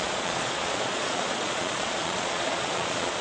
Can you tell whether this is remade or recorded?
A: remade